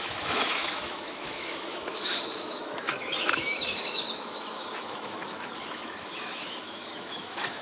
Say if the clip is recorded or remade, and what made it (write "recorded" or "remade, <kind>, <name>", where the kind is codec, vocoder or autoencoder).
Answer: remade, autoencoder, DAC-VAE